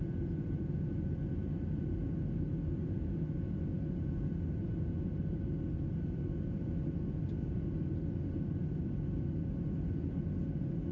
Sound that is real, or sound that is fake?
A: real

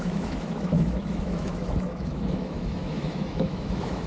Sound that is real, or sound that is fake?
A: fake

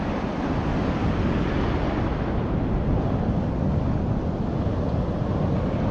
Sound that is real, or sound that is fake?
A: real